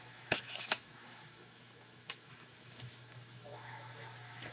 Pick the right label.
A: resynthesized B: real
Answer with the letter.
A